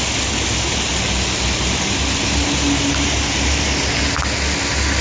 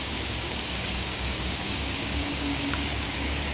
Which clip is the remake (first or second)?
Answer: second